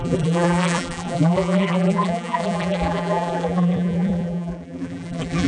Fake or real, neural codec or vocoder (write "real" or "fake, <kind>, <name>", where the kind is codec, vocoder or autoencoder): fake, vocoder, BigVGAN v2